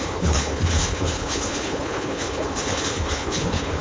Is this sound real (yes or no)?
no